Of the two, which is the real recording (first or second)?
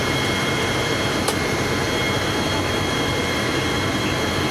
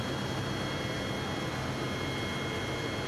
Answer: second